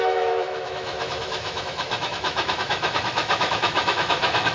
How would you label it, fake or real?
fake